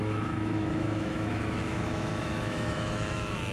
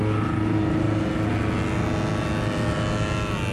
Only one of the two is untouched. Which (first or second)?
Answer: second